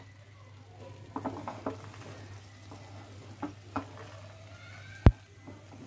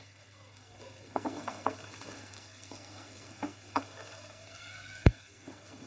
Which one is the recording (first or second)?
first